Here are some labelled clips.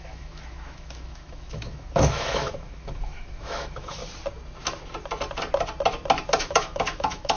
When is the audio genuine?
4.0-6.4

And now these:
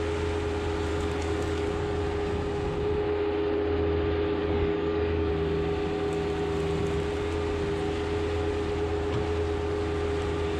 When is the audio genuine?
0.0-0.9; 2.0-4.4; 5.3-10.6

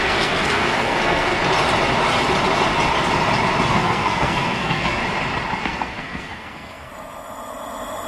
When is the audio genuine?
1.4-3.7; 5.0-5.6; 6.9-8.1

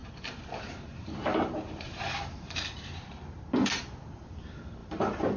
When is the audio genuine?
3.2-4.8

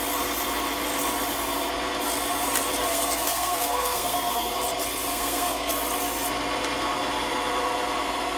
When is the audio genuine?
0.0-2.9; 4.5-5.1; 5.7-8.4

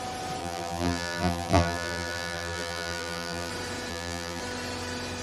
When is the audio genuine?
0.0-0.4; 3.5-3.9; 4.4-5.2

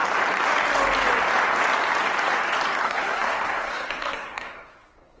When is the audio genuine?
0.0-2.8